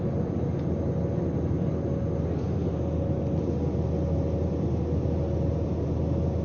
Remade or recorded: recorded